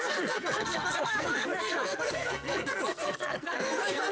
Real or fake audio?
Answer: fake